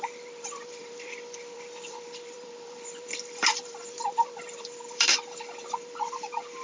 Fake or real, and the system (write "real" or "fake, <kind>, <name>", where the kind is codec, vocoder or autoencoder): fake, vocoder, BigVGAN v2